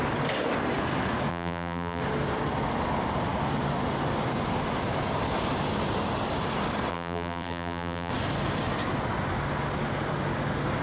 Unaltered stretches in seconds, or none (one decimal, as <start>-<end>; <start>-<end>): 0.0-1.3; 2.0-6.9; 8.1-10.8